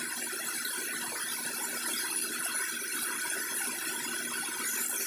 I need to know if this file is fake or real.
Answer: real